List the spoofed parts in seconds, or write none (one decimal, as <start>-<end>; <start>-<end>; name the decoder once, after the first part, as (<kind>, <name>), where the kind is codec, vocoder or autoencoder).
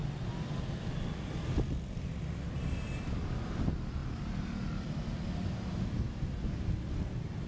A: none